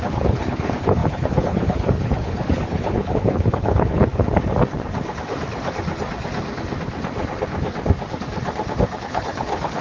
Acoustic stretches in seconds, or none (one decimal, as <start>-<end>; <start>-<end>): 4.1-9.0